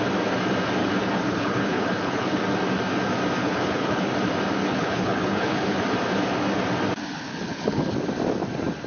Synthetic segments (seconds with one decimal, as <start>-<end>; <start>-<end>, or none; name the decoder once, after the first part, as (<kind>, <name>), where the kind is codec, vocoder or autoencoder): 0.8-2.4 (codec, HILCodec); 3.4-4.1; 4.6-5.8; 7.3-7.9